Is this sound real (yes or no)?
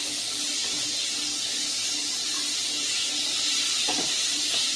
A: yes